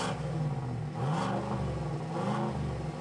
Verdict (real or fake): real